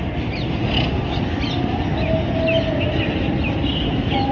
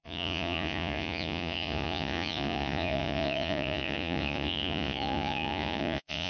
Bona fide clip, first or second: first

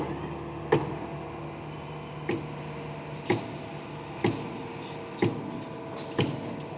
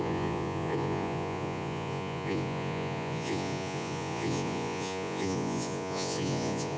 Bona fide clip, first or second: first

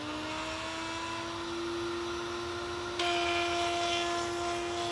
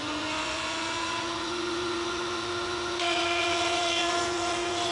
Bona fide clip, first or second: first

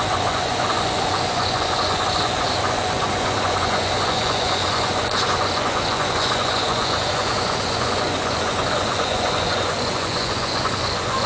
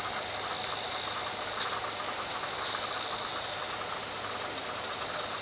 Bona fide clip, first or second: second